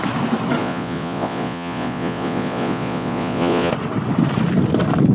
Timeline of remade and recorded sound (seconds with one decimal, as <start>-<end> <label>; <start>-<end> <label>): 0.0-0.6 recorded; 0.6-3.7 remade; 3.7-5.1 recorded

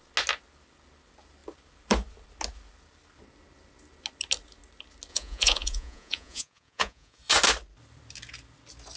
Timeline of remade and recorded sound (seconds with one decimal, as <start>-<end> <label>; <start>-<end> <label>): 0.0-5.1 recorded; 5.1-7.3 remade; 7.3-9.0 recorded

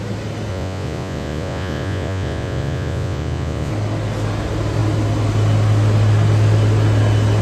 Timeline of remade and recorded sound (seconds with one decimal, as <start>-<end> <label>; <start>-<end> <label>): 0.0-0.5 recorded; 0.5-3.7 remade; 3.7-7.4 recorded

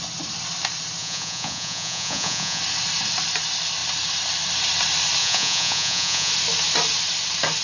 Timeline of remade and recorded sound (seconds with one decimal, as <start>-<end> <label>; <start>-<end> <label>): 0.0-1.0 recorded; 1.0-2.6 remade; 2.6-5.2 recorded; 5.2-6.3 remade; 6.3-7.6 recorded

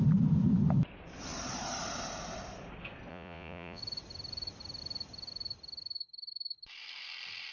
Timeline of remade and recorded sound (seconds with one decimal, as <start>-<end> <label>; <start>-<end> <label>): 0.0-3.1 recorded; 3.1-3.8 remade; 3.8-7.5 recorded